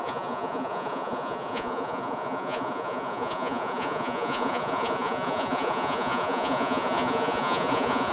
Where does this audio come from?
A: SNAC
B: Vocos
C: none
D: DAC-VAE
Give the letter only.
B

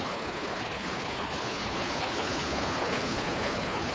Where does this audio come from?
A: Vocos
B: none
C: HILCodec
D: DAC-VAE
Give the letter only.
C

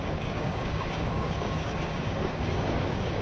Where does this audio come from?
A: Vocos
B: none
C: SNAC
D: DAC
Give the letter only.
D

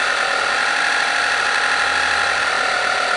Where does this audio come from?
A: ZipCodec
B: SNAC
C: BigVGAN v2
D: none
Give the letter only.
D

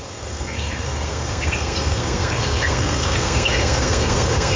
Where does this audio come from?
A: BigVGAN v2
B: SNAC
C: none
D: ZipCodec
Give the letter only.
B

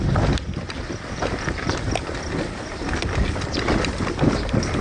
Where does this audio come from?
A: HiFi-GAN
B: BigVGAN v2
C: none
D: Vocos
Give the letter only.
C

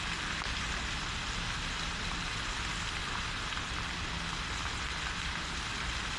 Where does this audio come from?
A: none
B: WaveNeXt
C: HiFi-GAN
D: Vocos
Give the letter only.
A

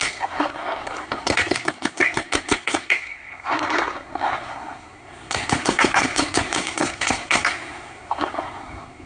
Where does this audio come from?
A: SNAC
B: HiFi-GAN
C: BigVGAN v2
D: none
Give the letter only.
A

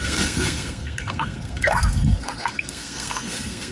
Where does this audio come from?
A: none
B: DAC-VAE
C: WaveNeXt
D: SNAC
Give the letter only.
D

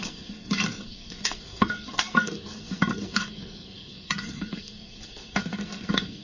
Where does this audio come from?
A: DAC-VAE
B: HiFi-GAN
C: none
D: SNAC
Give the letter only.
D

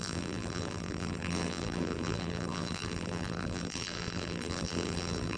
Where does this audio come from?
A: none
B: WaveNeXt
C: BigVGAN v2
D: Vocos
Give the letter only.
C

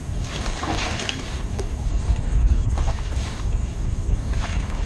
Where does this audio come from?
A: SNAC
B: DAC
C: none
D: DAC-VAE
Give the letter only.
B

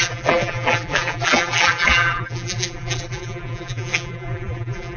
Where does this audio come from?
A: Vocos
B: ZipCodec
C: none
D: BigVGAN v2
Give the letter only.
D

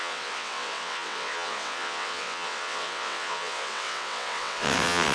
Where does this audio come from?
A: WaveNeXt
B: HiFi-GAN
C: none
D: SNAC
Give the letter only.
A